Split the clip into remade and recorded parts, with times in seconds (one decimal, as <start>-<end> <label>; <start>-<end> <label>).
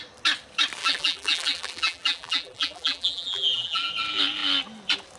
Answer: 0.0-0.8 recorded; 0.8-3.9 remade; 3.9-5.2 recorded